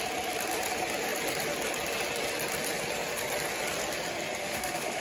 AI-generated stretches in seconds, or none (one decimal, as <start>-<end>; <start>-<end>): 4.4-5.0